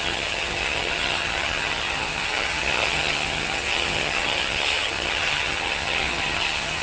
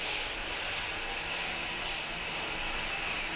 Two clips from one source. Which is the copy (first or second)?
first